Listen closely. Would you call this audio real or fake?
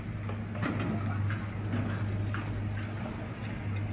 real